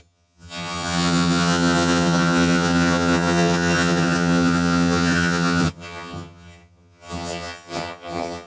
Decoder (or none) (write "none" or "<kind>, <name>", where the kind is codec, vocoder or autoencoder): vocoder, HiFi-GAN